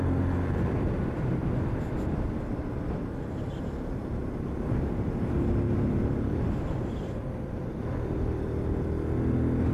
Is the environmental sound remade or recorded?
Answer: recorded